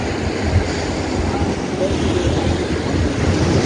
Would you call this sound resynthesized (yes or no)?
no